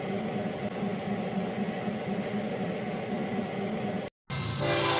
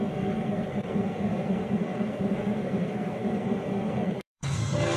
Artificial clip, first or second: second